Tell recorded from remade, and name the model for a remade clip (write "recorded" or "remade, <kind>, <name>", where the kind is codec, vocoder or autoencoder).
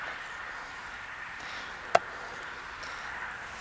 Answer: recorded